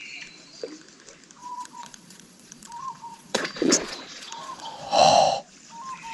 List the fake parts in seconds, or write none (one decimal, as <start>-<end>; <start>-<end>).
1.4-5.1